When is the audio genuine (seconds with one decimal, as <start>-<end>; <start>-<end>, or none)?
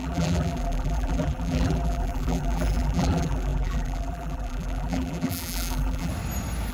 6.1-6.7